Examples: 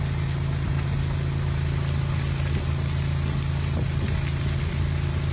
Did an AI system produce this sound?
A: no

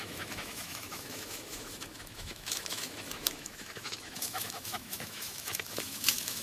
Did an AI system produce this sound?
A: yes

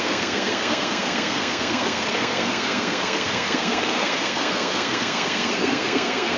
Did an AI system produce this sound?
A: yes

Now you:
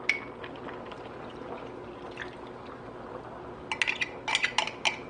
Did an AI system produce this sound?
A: no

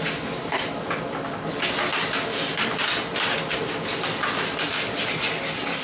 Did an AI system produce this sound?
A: no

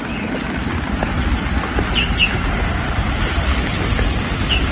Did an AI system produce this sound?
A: no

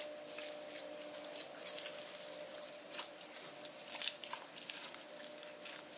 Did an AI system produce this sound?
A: no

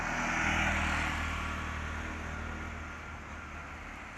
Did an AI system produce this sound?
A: no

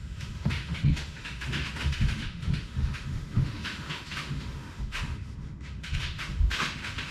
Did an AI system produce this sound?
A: yes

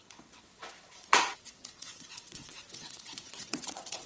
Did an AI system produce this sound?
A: yes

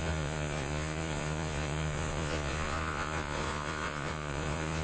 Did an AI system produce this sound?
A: yes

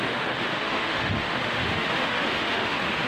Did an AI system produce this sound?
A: yes